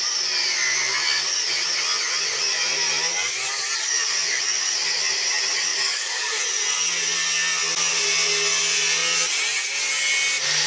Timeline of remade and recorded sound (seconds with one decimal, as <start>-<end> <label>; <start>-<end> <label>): 0.0-5.7 recorded; 5.7-6.4 remade; 6.4-10.7 recorded